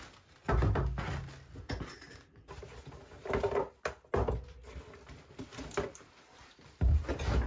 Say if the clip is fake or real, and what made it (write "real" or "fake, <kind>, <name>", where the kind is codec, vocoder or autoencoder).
real